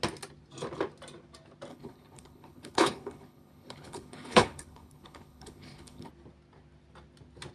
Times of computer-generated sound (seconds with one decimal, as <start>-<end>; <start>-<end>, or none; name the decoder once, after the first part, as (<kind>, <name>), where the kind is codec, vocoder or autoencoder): 1.7-6.1 (codec, HILCodec)